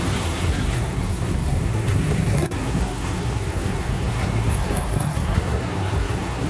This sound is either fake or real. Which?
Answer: fake